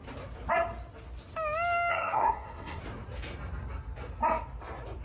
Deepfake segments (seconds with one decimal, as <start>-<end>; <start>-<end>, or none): 1.9-2.8